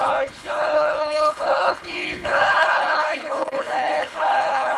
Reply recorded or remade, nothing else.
remade